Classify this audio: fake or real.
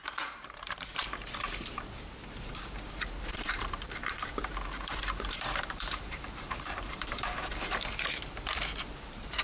fake